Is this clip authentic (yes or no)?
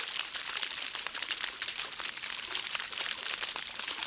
yes